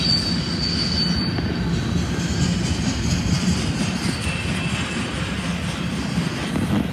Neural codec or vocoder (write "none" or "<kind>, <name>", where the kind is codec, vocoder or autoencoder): none